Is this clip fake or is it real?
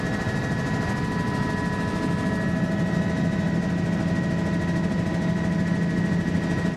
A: real